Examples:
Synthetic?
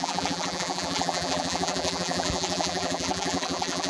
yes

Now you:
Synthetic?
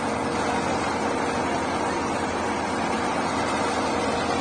no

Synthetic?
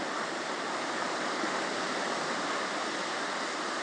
no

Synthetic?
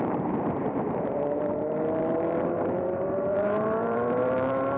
yes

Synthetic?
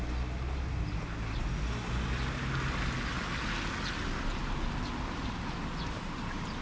no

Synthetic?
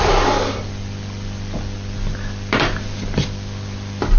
no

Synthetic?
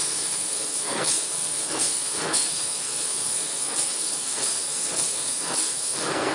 yes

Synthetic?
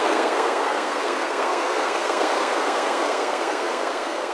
yes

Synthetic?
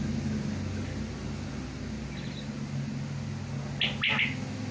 no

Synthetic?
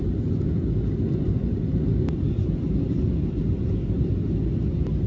no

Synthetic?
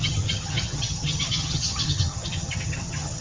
yes